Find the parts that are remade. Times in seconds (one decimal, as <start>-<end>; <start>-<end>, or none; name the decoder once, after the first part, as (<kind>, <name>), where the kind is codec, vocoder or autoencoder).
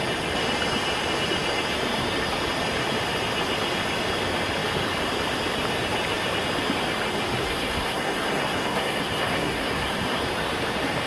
7.4-10.2 (codec, SNAC)